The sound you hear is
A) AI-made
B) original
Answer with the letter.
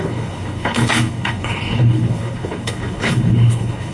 A